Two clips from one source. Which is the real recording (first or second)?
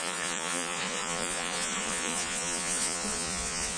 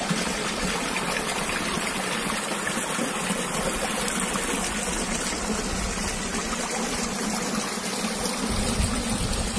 second